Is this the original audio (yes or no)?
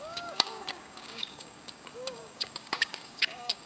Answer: no